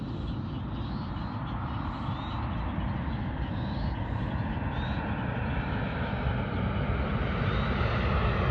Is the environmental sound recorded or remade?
recorded